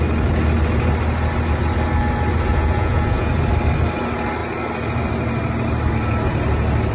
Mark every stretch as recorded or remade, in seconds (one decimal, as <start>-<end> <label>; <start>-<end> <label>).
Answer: 0.0-2.5 recorded; 2.5-3.3 remade; 3.3-6.9 recorded